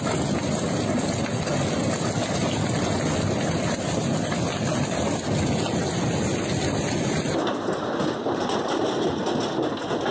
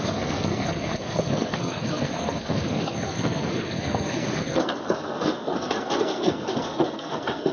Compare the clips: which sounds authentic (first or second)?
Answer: first